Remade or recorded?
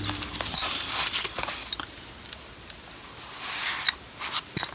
recorded